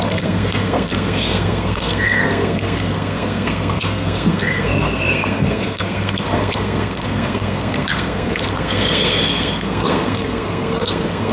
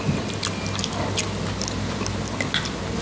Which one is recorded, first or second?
second